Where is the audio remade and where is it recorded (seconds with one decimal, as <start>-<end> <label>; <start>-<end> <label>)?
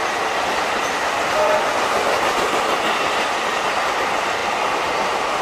0.0-3.2 remade; 3.2-4.4 recorded; 4.4-5.4 remade